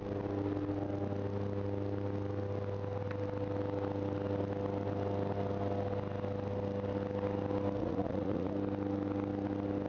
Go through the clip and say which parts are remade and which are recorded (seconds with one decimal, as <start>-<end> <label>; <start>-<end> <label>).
0.0-7.8 recorded; 7.8-8.5 remade; 8.5-9.9 recorded